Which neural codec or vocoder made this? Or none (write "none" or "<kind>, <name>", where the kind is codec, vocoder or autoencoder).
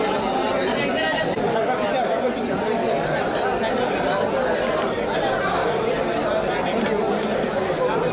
none